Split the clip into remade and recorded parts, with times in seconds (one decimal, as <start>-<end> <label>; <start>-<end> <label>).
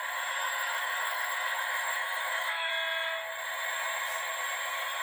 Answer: 0.0-0.4 recorded; 0.4-2.7 remade; 2.7-5.0 recorded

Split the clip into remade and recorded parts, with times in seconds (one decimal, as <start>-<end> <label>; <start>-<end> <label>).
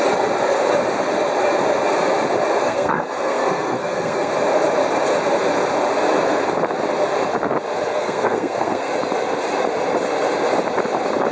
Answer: 0.0-2.6 recorded; 2.6-4.3 remade; 4.3-7.9 recorded; 7.9-8.9 remade; 8.9-11.3 recorded